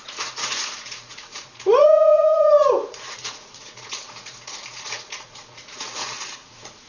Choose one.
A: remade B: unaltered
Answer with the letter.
A